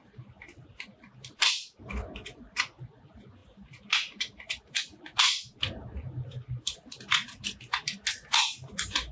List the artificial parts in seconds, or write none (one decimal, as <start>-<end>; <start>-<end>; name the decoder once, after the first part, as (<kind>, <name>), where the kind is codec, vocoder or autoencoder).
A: none